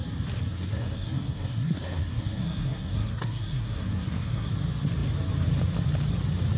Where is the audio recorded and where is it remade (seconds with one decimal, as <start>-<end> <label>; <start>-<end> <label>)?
0.0-0.5 recorded; 0.5-4.5 remade; 4.5-6.6 recorded